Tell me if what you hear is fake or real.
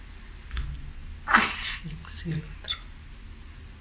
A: real